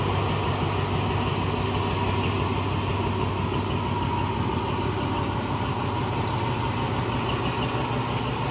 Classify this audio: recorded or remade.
recorded